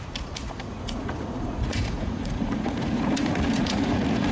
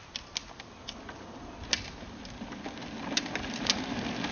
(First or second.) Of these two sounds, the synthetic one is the first